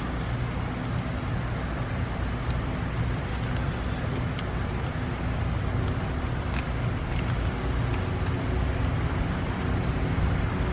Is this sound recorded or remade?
recorded